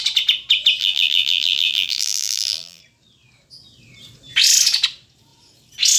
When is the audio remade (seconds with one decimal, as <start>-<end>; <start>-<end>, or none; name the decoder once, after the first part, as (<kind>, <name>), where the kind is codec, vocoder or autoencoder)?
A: 0.8-2.8 (vocoder, BigVGAN v2)